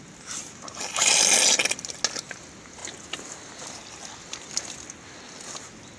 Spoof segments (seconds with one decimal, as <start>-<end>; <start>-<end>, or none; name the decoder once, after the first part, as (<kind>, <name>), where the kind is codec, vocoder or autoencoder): none